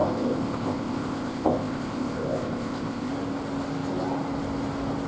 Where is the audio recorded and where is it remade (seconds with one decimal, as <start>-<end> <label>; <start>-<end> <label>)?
0.0-3.1 remade; 3.1-5.1 recorded